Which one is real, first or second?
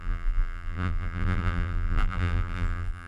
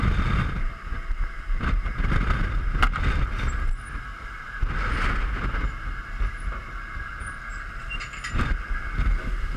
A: second